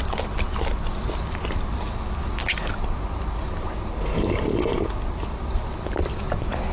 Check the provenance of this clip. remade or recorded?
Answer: recorded